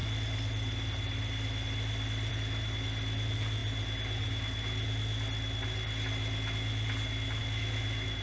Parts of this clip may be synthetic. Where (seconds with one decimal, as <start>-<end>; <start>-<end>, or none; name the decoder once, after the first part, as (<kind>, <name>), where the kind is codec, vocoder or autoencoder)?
none